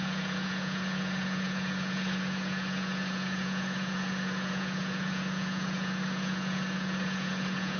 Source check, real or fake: fake